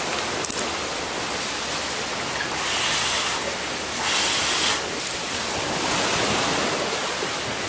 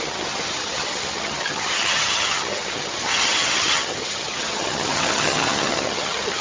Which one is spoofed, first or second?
second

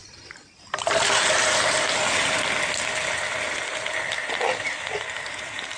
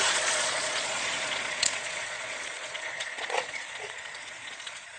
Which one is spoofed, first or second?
second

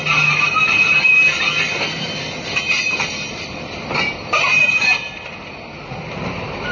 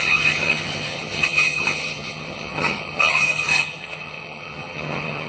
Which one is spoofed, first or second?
second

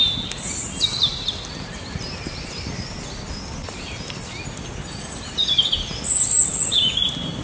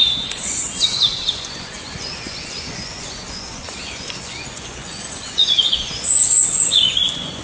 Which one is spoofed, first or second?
second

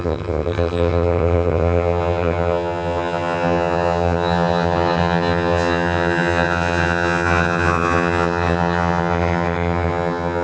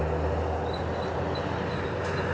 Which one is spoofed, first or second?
first